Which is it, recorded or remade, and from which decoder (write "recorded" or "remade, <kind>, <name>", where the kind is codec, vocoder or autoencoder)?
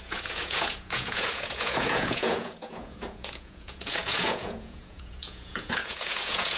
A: remade, vocoder, Vocos